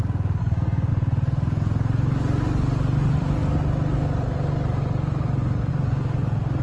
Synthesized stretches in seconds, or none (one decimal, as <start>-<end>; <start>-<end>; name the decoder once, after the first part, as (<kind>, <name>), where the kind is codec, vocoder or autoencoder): 0.4-0.9 (codec, SNAC)